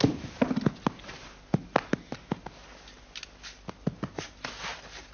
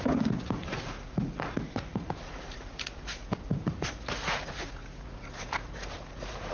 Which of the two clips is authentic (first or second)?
first